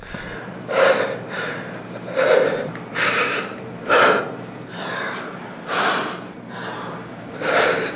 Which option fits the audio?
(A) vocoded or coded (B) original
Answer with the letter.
A